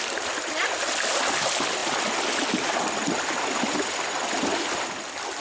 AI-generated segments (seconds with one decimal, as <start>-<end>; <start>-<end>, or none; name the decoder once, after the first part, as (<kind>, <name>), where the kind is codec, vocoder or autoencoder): none